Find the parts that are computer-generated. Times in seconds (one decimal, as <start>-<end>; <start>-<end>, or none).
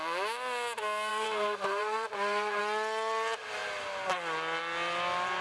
1.1-2.6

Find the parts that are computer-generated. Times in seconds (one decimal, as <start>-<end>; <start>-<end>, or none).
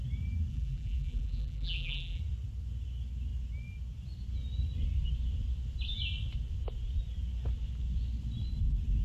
0.5-2.2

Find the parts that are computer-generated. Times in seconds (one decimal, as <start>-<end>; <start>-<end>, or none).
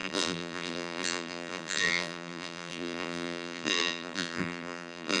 0.0-5.2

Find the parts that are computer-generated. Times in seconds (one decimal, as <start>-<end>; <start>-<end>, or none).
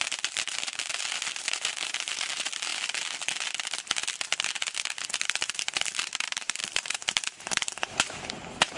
0.0-0.9; 1.4-2.7; 5.4-8.8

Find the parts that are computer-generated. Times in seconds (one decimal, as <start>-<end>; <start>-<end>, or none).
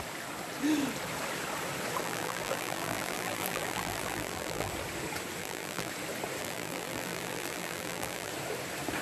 2.0-4.7; 5.4-5.9; 6.4-8.3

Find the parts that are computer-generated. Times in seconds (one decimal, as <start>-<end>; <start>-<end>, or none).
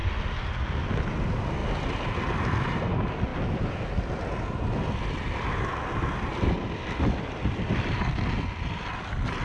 none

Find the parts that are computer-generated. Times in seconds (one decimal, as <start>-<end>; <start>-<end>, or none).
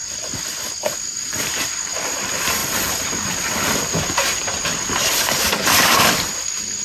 0.0-6.8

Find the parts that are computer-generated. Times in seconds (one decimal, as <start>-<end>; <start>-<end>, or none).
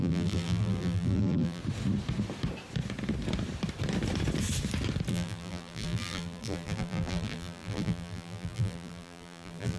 0.0-1.6; 5.1-9.8